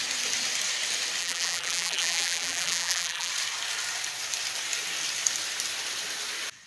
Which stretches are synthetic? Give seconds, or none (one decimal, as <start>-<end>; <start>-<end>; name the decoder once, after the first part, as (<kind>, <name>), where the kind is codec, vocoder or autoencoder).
1.2-3.3 (vocoder, BigVGAN v2)